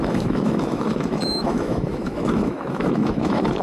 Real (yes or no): no